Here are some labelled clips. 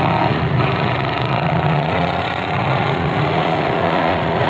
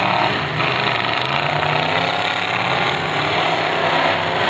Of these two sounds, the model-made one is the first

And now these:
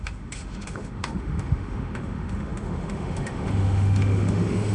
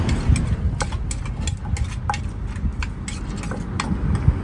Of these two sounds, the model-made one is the first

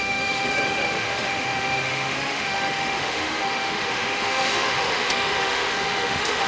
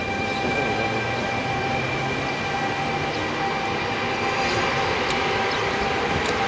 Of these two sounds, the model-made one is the first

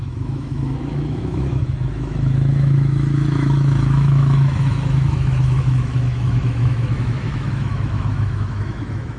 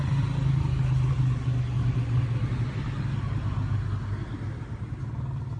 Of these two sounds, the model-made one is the first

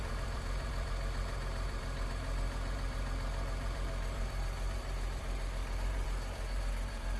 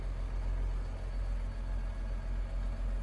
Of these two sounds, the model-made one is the first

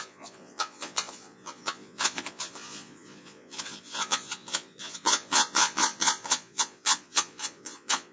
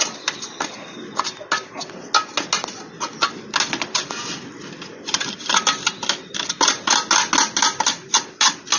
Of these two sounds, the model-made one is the first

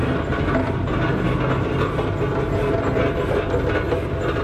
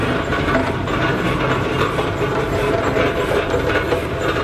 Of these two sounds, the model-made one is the second